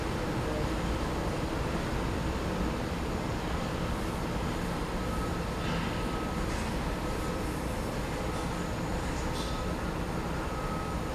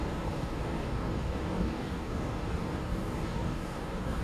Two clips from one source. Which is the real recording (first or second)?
first